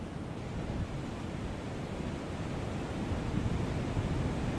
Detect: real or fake real